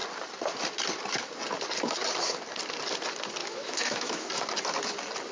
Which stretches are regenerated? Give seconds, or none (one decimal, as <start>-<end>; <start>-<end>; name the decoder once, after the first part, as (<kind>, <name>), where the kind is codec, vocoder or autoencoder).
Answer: 3.4-4.3 (autoencoder, DAC-VAE)